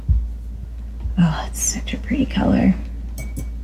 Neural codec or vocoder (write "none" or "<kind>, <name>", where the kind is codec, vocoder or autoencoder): none